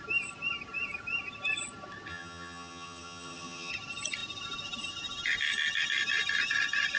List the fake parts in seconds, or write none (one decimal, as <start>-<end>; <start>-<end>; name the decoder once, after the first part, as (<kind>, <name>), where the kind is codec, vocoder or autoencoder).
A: 2.1-3.7 (vocoder, HiFi-GAN)